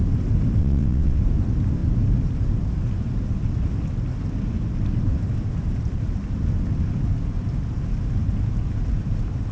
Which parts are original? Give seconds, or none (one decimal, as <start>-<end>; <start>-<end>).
0.0-0.6; 1.2-9.5